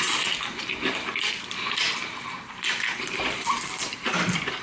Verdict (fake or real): fake